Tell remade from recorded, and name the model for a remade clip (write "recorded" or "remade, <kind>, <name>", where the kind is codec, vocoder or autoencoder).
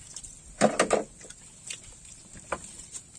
recorded